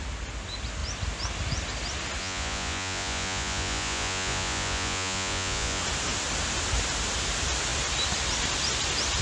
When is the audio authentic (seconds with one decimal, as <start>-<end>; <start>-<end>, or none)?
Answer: 0.0-2.2; 5.8-9.2